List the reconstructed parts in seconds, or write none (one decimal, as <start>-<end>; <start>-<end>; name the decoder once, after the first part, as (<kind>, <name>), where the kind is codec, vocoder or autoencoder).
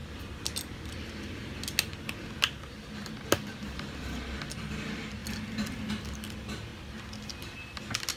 none